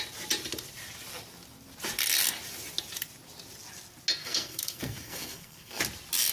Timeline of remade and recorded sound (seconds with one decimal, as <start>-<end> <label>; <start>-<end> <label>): 0.0-4.2 recorded; 4.2-5.8 remade; 5.8-6.3 recorded